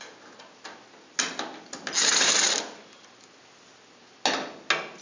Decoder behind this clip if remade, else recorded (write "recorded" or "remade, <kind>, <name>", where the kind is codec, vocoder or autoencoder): recorded